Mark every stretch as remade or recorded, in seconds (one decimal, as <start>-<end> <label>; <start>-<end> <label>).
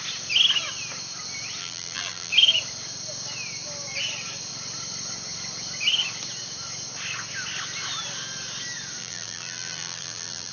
0.0-1.6 recorded; 1.6-2.3 remade; 2.3-9.0 recorded; 9.0-10.5 remade